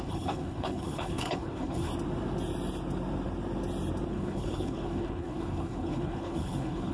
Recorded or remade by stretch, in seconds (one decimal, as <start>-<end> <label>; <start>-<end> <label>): 0.0-1.9 remade; 1.9-4.1 recorded; 4.1-6.9 remade

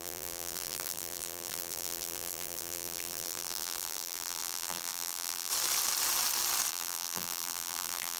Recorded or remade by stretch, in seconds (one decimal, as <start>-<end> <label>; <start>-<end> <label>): 0.0-5.5 remade; 5.5-6.7 recorded; 6.7-8.2 remade

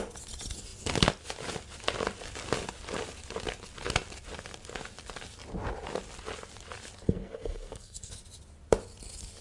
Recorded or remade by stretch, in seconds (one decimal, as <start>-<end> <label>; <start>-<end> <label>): 0.0-7.0 recorded; 7.0-8.1 remade; 8.1-9.4 recorded

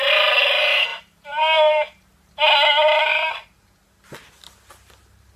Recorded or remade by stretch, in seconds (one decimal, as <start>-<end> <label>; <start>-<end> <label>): 0.0-0.9 recorded; 0.9-2.3 remade; 2.3-5.4 recorded

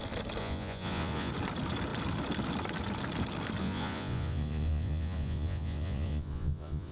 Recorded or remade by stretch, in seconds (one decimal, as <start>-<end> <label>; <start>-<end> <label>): 0.0-0.4 recorded; 0.4-1.3 remade; 1.3-3.6 recorded; 3.6-6.9 remade

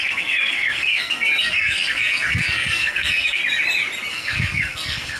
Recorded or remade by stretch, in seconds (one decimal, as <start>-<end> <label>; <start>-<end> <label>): 0.0-3.4 remade; 3.4-4.1 recorded; 4.1-5.2 remade